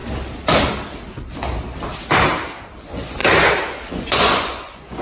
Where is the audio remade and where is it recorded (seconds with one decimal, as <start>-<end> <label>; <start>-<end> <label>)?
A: 0.0-2.8 recorded; 2.8-3.2 remade; 3.2-3.9 recorded; 3.9-5.0 remade